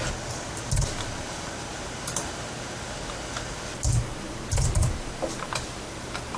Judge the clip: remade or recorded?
recorded